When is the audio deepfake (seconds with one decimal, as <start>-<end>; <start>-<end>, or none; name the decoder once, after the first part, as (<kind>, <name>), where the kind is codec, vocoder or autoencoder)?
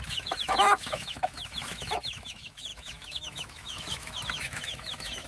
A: 0.0-5.3 (autoencoder, DAC-VAE)